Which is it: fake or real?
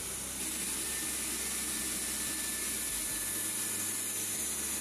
real